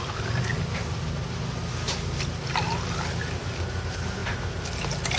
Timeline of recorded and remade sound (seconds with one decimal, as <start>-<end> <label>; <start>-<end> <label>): 0.0-5.2 recorded